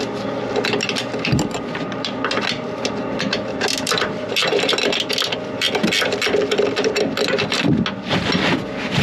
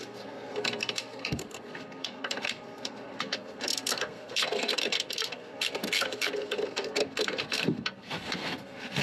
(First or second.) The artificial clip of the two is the second